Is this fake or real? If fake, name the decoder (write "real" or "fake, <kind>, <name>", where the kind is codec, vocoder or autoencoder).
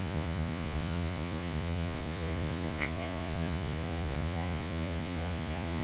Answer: fake, vocoder, Vocos